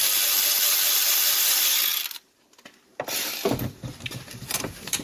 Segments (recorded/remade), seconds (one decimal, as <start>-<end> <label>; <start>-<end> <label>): 0.0-3.8 recorded; 3.8-5.0 remade